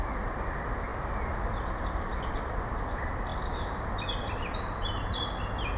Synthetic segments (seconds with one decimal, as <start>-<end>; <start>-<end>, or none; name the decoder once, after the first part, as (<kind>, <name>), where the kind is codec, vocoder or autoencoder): none